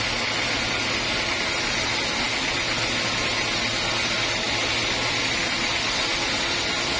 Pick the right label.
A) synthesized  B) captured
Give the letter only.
B